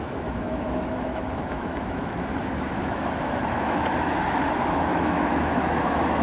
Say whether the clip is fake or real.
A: fake